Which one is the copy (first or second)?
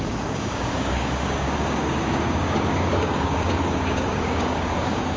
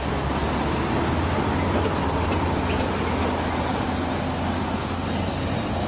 first